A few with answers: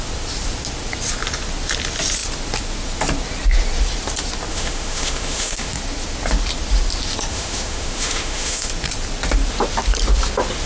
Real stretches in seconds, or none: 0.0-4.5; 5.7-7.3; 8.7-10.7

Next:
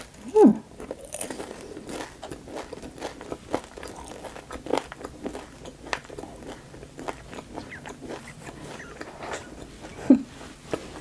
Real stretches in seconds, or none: 0.0-0.5; 1.8-7.6; 8.7-11.0